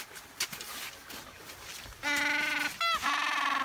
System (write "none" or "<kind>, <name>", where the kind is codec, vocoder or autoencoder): none